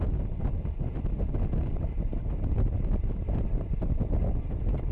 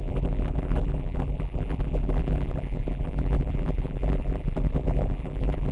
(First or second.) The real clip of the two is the first